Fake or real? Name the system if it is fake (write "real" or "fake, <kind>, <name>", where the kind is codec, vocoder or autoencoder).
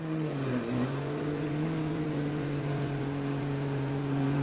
fake, vocoder, Vocos